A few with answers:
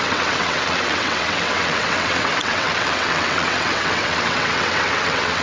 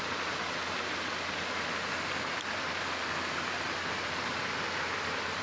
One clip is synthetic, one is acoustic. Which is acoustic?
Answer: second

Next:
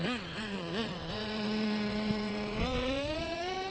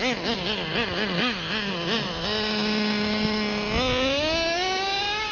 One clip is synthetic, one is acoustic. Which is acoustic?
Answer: second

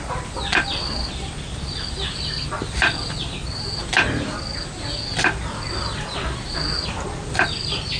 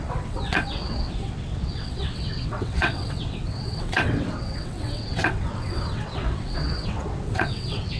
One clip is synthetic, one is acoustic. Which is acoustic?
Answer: first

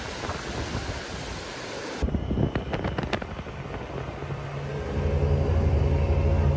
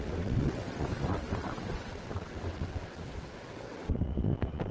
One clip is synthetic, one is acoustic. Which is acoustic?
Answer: first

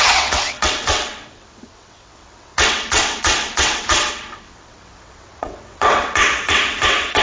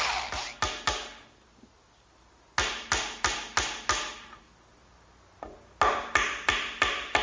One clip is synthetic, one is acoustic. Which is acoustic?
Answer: second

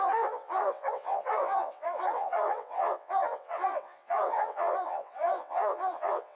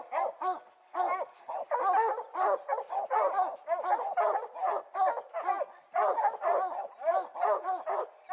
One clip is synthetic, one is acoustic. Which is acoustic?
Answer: second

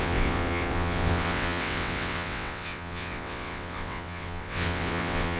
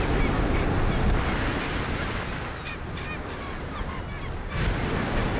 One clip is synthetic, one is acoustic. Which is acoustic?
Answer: second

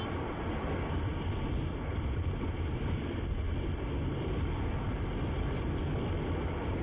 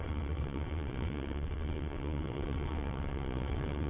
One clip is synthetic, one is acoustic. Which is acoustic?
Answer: first